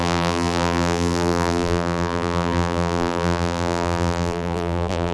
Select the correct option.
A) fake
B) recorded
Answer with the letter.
A